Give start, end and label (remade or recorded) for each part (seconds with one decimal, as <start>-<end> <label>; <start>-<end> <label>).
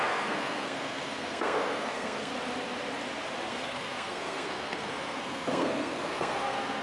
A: 0.0-2.3 remade; 2.3-3.5 recorded; 3.5-6.8 remade